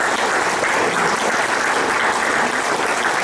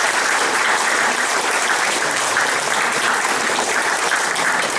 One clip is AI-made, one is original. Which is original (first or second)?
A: first